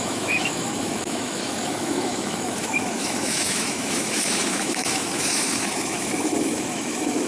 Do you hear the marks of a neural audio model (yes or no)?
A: yes